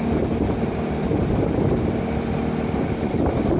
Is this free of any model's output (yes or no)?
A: yes